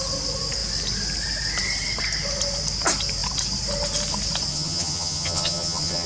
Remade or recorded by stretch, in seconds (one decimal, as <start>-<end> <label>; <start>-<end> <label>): 0.0-4.5 recorded; 4.5-6.1 remade